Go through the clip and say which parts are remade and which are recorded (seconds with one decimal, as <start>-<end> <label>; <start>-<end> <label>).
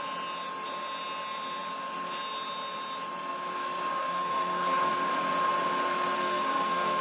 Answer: 0.0-4.0 recorded; 4.0-4.8 remade; 4.8-6.1 recorded; 6.1-7.0 remade